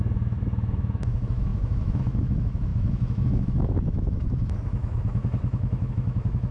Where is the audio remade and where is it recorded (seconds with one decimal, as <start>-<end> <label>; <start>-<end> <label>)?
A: 0.0-6.5 remade